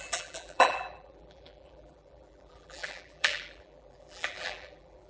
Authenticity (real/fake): fake